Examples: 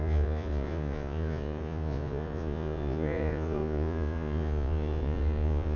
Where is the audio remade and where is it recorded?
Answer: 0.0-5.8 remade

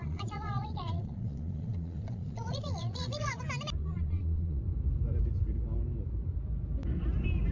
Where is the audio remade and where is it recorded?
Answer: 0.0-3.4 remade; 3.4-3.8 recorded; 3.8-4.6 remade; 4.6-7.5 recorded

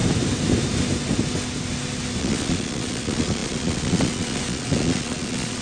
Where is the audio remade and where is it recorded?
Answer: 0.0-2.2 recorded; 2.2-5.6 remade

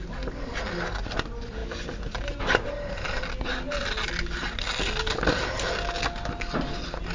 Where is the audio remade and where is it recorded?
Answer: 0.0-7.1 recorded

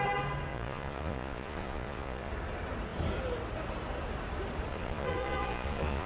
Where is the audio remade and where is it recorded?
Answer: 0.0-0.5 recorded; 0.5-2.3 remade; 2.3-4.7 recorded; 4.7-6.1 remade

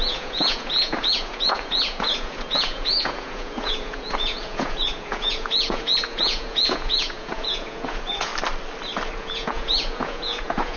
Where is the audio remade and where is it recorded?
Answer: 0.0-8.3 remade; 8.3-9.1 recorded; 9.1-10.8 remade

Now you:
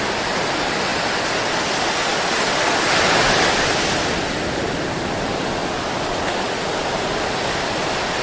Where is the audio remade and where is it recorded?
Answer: 0.0-8.2 recorded

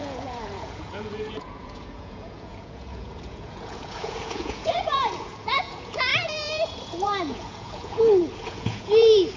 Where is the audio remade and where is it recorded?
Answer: 0.0-9.4 remade